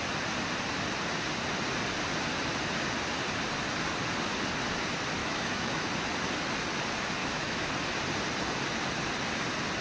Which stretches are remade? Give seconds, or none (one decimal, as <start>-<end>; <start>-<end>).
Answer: 5.2-5.9; 7.2-7.7